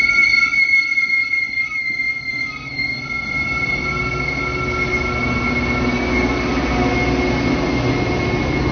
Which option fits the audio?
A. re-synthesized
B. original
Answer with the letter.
B